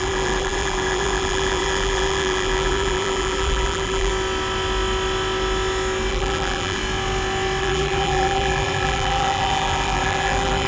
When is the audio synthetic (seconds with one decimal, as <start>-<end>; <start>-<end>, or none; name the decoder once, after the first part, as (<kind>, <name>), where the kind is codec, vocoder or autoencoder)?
0.0-4.1 (vocoder, BigVGAN v2); 6.1-6.8; 7.6-10.7